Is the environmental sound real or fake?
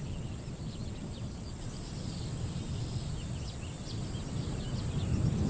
real